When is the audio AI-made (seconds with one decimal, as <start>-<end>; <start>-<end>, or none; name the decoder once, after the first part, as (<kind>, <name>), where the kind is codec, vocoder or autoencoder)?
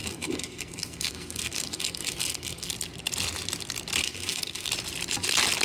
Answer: 0.0-2.7 (codec, SNAC); 4.0-4.7